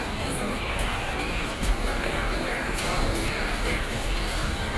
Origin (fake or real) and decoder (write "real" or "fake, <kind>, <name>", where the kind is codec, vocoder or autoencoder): fake, codec, DAC